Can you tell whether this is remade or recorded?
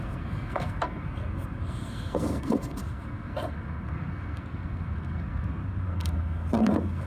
remade